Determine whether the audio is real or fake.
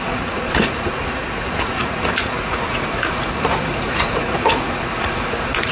fake